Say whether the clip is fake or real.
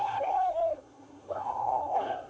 fake